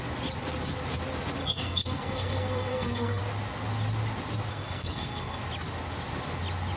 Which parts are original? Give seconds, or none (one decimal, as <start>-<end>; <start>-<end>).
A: 0.0-1.4; 3.2-4.5; 5.4-6.8